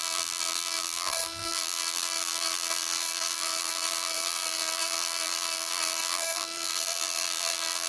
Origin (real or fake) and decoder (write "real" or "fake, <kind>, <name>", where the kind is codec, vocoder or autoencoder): fake, vocoder, BigVGAN v2